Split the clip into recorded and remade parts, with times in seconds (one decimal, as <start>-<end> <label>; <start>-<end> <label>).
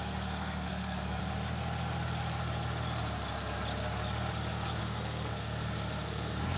0.0-1.2 remade; 1.2-4.8 recorded; 4.8-6.6 remade